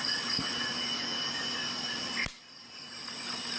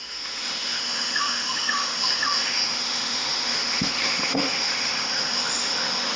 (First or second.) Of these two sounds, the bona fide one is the first